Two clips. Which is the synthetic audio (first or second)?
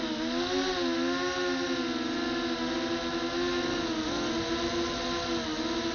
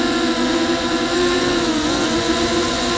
second